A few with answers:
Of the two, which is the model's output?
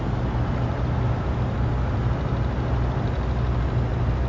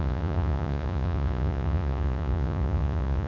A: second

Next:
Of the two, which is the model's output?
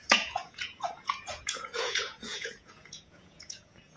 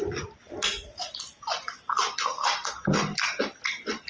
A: first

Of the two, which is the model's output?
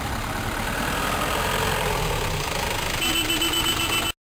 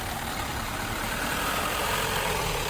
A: second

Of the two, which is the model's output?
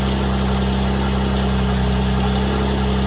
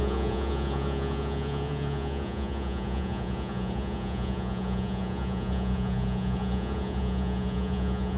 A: second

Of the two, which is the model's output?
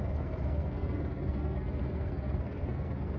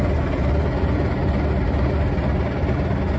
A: first